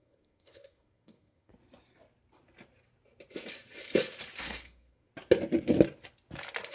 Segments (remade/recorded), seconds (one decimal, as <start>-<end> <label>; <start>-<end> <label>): 0.0-1.5 remade; 1.5-4.4 recorded; 4.4-5.1 remade; 5.1-6.7 recorded